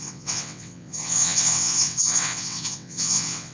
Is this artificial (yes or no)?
yes